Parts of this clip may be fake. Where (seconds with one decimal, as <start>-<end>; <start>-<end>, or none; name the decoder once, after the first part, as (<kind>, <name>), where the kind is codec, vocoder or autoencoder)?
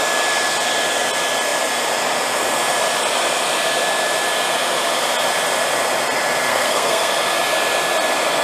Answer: 6.5-7.1 (codec, SNAC)